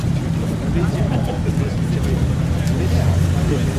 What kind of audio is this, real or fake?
real